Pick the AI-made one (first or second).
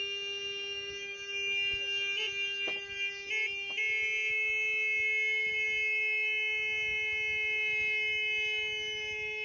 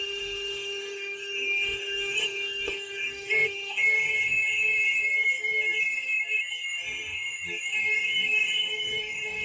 second